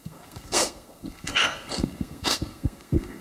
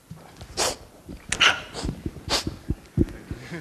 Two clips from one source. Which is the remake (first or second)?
first